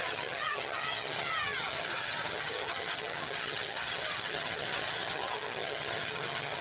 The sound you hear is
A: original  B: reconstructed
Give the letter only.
B